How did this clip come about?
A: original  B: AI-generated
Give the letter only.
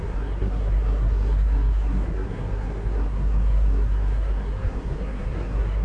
B